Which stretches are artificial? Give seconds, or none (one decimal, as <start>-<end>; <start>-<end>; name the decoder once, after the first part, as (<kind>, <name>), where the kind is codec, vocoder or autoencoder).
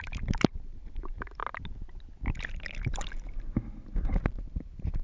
0.0-1.4 (vocoder, BigVGAN v2); 4.4-5.0